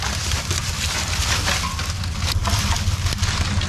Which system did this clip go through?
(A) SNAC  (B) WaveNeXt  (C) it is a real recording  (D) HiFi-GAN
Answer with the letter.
C